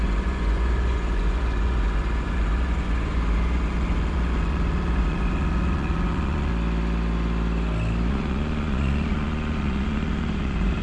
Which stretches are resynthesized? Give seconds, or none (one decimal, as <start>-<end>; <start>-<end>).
0.0-6.5; 8.1-10.8